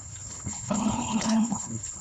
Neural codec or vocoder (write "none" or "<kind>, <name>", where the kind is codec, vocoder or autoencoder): codec, HILCodec